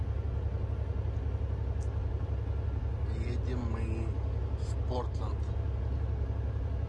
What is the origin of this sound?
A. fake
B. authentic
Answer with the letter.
B